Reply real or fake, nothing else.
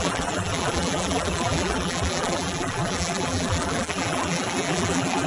fake